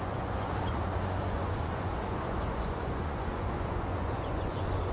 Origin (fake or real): fake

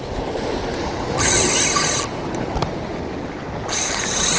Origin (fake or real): real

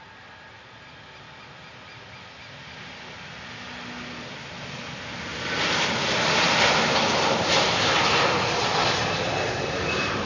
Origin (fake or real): real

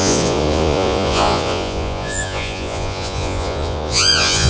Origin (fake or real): fake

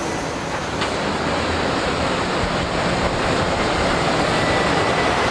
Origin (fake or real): real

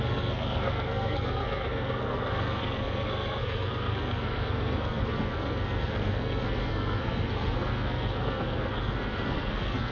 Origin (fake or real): fake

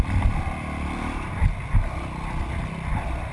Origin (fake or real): real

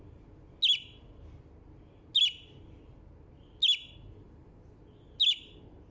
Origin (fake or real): real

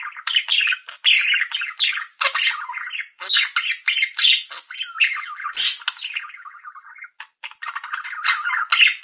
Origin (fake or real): real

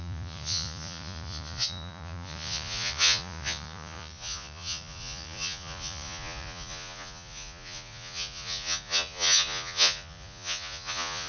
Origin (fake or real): fake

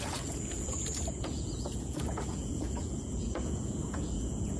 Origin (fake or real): fake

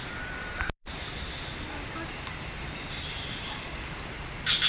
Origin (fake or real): real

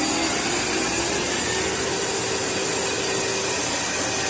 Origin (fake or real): real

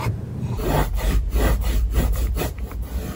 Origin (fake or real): real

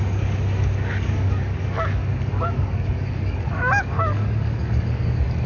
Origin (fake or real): fake